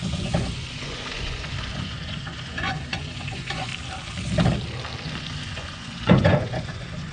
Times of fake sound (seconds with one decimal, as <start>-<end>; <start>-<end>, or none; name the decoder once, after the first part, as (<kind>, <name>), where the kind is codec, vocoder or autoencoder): 0.0-3.7 (vocoder, Vocos); 5.2-7.1